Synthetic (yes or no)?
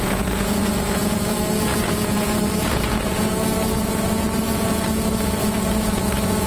yes